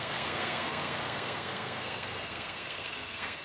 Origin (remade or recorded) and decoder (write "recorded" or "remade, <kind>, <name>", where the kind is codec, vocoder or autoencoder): remade, codec, SNAC